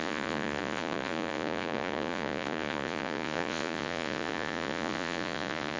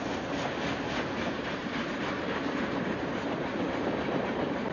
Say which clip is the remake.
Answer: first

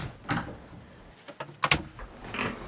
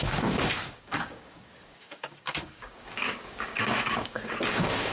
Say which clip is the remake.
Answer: second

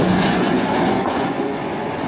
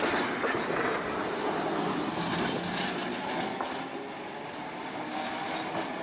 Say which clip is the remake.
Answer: first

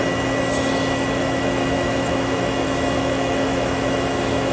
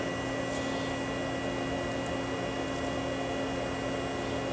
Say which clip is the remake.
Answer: first